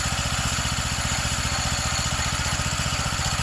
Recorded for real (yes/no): yes